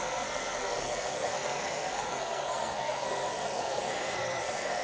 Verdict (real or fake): fake